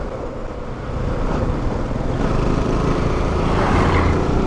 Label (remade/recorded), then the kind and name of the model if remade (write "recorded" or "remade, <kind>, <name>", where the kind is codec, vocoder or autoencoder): recorded